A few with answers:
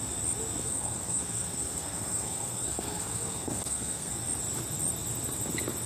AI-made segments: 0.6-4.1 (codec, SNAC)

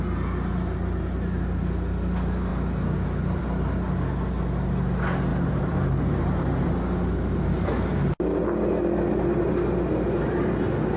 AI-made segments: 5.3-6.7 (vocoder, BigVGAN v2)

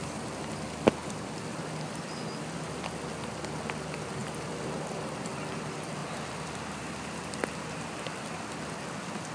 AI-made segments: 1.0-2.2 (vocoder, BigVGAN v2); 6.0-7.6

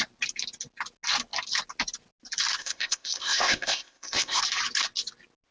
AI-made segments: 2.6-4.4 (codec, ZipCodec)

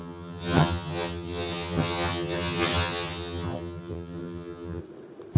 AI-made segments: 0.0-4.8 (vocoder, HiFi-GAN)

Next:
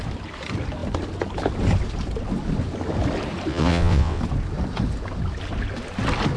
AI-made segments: 3.5-4.2 (vocoder, WaveNeXt)

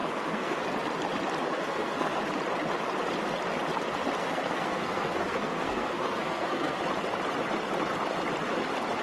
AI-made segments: 0.0-0.6 (codec, SNAC); 1.4-2.2; 4.2-6.8